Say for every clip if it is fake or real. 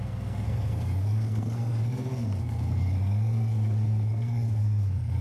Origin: fake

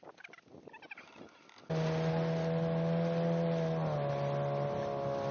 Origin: real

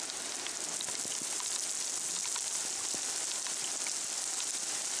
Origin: real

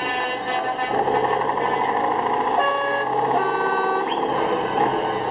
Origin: real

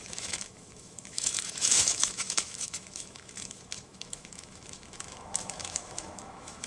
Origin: fake